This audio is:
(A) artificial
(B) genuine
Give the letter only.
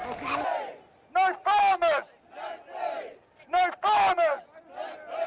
B